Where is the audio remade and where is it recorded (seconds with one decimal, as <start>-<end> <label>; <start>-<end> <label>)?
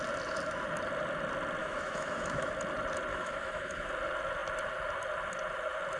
0.0-1.6 recorded; 1.6-2.5 remade; 2.5-3.1 recorded; 3.1-3.9 remade; 3.9-6.0 recorded